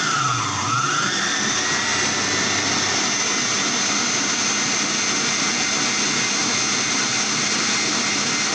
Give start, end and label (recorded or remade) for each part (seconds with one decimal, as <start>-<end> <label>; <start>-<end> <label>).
0.0-8.5 recorded